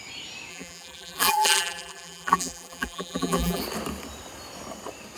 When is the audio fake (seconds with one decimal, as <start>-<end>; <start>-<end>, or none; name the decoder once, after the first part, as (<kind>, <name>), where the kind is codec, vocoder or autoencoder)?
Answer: 0.5-3.6 (vocoder, BigVGAN v2)

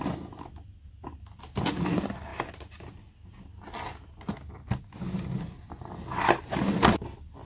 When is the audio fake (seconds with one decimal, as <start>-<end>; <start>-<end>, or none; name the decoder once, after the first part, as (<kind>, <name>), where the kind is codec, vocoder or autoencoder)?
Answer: none

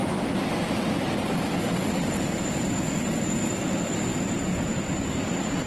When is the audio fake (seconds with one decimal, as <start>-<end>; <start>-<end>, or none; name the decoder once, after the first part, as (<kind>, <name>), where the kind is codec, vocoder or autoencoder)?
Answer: 2.0-3.6 (vocoder, BigVGAN v2); 4.1-5.0

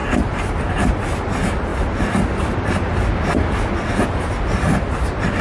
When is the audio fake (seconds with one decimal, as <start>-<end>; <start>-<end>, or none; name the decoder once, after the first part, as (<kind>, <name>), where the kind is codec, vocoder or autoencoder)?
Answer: none